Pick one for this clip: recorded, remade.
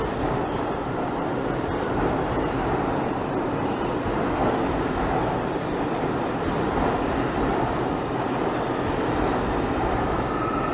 remade